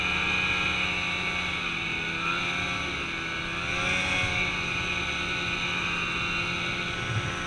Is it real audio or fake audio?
real